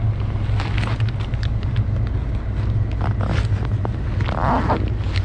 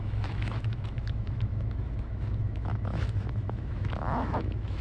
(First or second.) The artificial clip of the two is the second